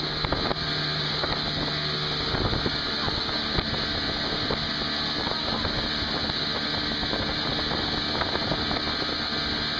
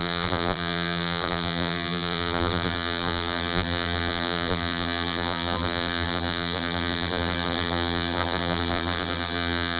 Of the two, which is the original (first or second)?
first